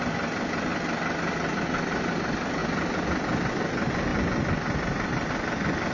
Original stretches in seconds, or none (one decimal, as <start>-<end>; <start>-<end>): 0.0-5.9